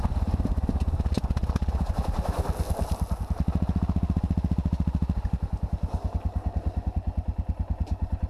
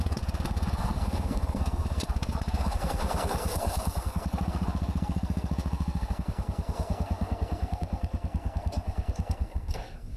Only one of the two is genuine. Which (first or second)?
first